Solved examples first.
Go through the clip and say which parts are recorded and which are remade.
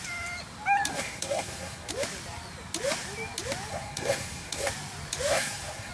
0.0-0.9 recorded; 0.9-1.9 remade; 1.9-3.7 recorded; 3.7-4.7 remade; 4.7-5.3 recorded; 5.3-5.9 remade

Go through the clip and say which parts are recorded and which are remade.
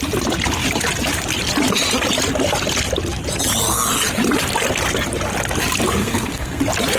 0.0-6.0 recorded; 6.0-6.6 remade; 6.6-7.0 recorded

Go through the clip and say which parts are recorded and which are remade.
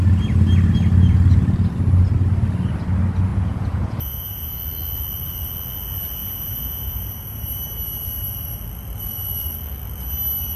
0.0-3.3 recorded; 3.3-4.6 remade; 4.6-6.2 recorded; 6.2-7.4 remade; 7.4-10.6 recorded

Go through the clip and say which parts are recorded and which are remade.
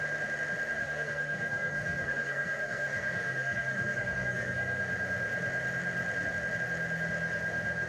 0.0-0.8 recorded; 0.8-4.8 remade; 4.8-7.9 recorded